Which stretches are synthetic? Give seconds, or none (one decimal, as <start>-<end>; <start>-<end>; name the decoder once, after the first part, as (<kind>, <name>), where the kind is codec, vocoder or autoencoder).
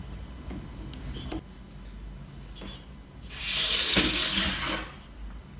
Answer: none